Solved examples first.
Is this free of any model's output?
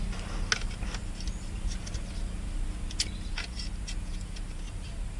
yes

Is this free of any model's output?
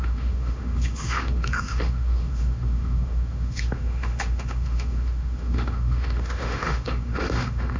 no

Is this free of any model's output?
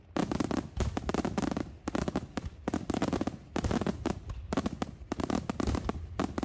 yes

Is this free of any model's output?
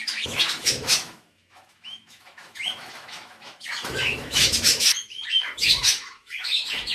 no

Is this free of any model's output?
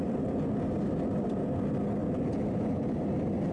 yes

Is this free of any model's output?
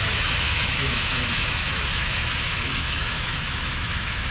no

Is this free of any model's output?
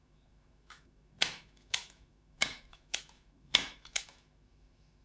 no